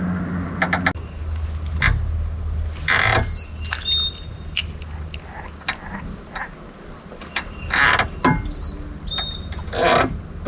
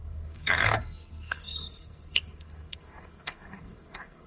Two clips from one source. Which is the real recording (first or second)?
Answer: first